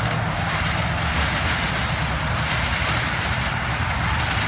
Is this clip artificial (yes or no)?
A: no